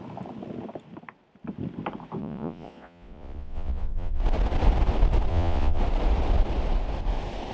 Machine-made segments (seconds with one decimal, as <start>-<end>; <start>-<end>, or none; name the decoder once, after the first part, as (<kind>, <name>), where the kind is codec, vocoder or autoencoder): 2.2-4.2 (vocoder, Vocos); 5.3-5.8